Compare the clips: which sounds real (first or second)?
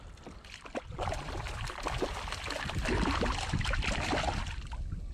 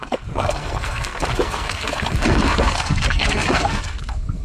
first